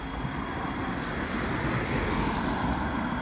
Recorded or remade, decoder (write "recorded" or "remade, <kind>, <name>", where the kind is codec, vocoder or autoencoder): recorded